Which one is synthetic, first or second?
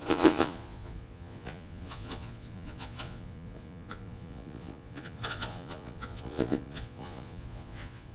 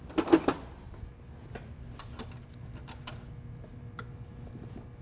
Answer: first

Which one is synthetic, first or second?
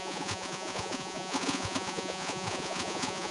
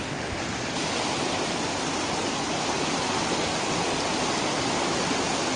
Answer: first